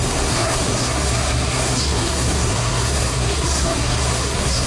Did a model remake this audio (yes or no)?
yes